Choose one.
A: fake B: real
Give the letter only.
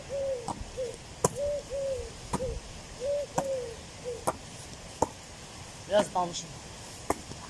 B